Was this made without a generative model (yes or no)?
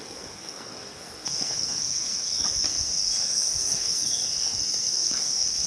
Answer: no